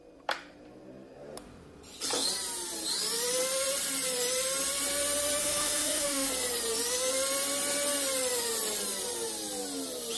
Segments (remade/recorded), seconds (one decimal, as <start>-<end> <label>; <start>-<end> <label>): 0.0-5.4 recorded; 5.4-6.3 remade; 6.3-10.2 recorded